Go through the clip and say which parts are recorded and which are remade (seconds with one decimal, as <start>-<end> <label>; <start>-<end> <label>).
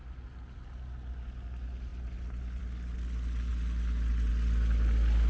0.0-3.5 recorded; 3.5-4.3 remade; 4.3-5.3 recorded